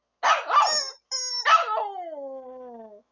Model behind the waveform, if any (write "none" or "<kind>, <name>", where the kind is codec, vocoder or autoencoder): none